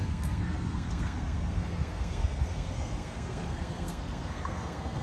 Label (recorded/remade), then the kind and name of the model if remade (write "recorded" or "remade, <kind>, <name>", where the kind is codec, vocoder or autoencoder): remade, codec, SNAC